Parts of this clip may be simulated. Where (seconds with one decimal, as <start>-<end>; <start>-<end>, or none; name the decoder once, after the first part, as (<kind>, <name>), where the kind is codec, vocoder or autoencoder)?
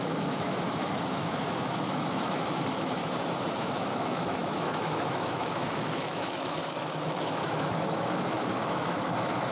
0.0-3.0 (autoencoder, DAC-VAE); 3.6-9.5